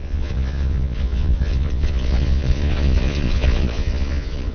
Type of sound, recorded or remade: remade